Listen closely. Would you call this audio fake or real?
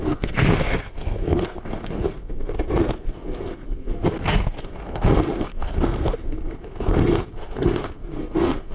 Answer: fake